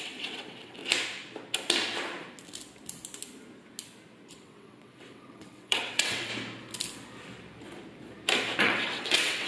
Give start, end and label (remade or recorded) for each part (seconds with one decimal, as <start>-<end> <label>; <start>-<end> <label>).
0.0-0.8 remade; 0.8-4.3 recorded; 4.3-6.3 remade; 6.3-8.6 recorded; 8.6-9.5 remade